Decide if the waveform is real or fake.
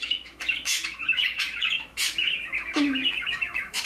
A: fake